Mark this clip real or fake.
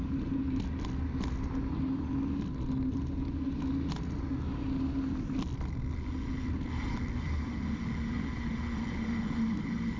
real